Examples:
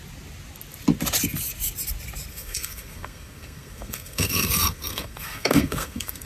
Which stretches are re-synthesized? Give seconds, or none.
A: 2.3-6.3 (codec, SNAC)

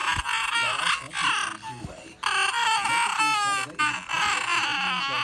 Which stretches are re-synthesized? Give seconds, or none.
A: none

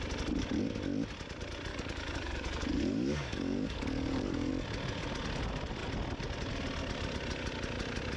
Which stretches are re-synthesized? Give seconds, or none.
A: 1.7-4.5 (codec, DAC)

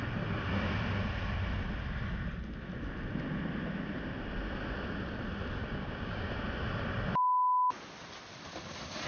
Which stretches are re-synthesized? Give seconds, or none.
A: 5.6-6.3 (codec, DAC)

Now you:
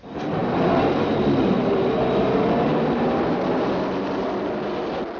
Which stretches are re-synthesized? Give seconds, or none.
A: none